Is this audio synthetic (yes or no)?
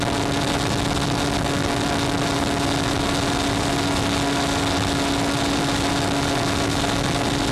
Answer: no